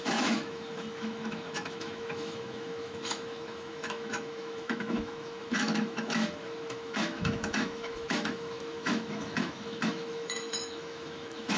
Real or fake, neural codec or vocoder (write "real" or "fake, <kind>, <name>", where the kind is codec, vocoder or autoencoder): fake, autoencoder, DAC-VAE